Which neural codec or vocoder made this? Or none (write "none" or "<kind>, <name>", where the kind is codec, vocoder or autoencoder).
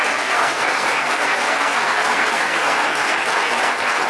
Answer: codec, SNAC